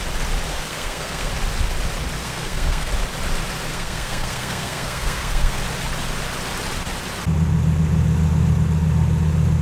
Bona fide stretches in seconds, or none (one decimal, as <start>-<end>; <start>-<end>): 0.0-0.5; 1.3-2.2; 2.9-3.7; 5.6-9.6